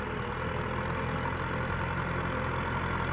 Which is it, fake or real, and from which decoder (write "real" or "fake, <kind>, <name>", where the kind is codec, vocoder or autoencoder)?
real